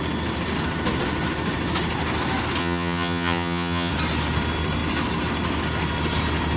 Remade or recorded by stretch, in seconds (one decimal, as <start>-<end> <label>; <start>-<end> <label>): 0.0-2.6 recorded; 2.6-3.9 remade; 3.9-6.6 recorded